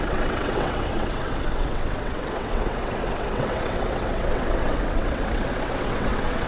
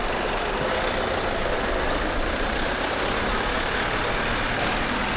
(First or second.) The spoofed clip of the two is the first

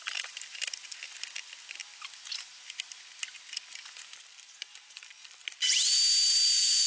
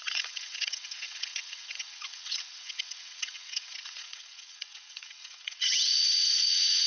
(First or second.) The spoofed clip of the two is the second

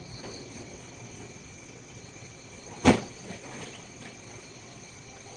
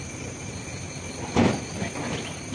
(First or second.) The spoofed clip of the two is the first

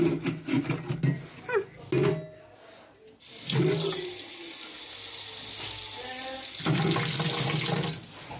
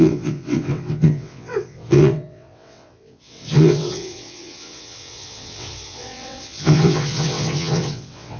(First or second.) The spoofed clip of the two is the second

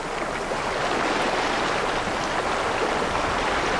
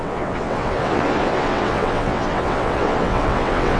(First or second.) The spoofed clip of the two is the second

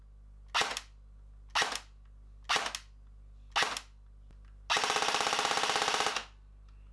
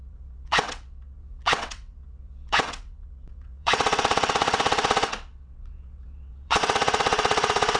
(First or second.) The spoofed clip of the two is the second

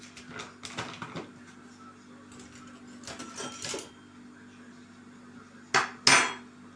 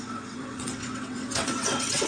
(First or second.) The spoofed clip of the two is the second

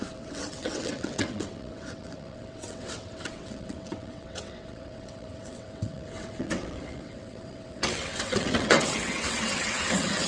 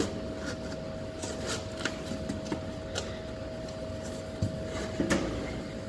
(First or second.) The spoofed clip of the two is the first